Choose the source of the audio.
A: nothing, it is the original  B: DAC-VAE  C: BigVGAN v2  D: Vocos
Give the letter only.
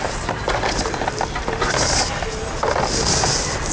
A